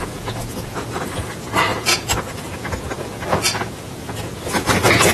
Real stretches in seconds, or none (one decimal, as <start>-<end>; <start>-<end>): none